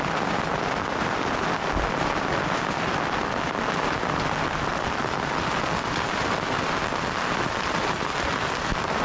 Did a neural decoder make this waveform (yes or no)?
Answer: no